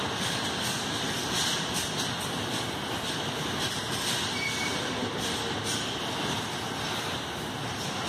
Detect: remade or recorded recorded